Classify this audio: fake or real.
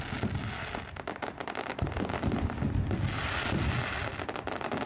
real